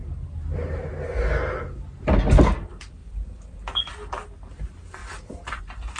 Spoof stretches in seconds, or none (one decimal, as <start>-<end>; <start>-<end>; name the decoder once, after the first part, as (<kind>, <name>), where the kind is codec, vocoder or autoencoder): 0.0-0.9 (vocoder, BigVGAN v2); 3.0-3.8

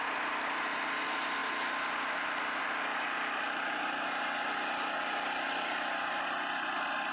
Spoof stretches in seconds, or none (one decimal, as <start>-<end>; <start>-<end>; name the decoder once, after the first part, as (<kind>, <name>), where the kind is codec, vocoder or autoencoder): none

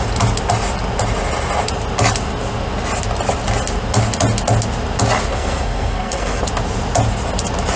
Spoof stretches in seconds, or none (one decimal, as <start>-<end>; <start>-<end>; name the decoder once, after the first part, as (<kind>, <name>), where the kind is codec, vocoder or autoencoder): 5.3-6.4 (codec, SNAC)

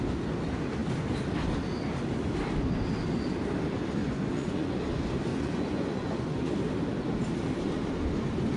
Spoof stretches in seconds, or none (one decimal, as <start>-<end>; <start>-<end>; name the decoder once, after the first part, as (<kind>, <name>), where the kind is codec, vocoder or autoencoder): 4.0-4.8 (vocoder, Vocos); 5.3-6.5

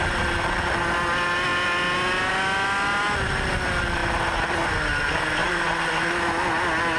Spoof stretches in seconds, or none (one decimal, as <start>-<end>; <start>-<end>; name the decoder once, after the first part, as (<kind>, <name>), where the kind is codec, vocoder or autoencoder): 5.4-5.9 (vocoder, BigVGAN v2)

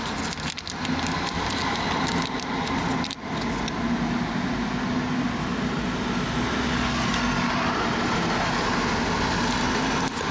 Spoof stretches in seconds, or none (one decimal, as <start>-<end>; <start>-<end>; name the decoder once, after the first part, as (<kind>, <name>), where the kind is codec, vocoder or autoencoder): none

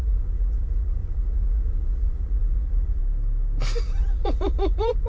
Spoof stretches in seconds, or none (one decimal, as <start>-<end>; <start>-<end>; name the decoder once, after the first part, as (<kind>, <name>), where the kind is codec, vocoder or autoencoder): 0.0-3.0 (vocoder, Vocos); 3.8-5.1

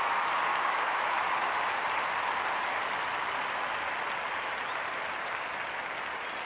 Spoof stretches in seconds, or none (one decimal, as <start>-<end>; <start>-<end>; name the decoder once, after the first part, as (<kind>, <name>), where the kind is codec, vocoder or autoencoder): 0.5-1.1 (autoencoder, DAC-VAE)